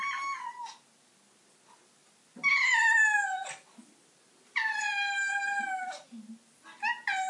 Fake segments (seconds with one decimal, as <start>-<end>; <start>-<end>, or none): none